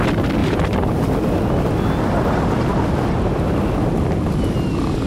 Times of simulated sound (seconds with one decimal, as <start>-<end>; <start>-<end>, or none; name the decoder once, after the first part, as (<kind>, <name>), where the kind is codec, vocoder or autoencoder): 0.4-1.1 (vocoder, BigVGAN v2)